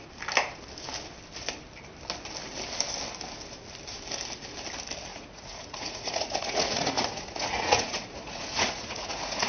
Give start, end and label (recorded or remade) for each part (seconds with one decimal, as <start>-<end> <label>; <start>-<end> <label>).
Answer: 0.0-5.1 recorded; 5.1-9.5 remade